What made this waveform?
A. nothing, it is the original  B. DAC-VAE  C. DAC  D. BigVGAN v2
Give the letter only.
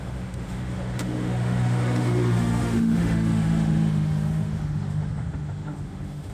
B